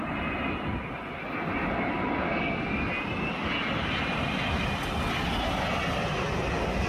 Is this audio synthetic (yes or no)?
no